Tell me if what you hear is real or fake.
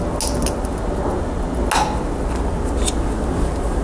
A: real